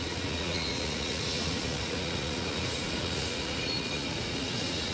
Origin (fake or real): fake